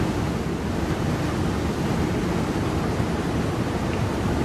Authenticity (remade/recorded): recorded